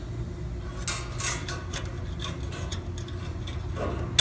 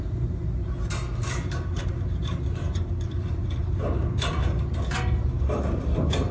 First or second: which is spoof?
second